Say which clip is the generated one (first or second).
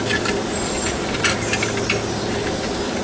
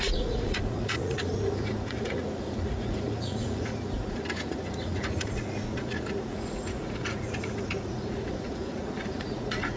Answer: second